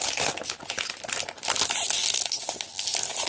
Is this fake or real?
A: real